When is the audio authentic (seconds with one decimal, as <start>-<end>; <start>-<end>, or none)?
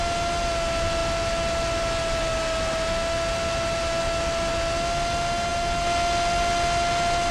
0.0-7.3